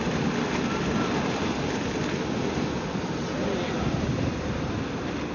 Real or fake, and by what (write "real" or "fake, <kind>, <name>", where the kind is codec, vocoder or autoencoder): real